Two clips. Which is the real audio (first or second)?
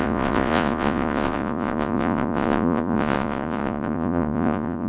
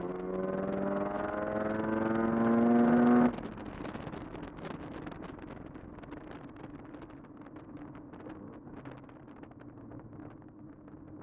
second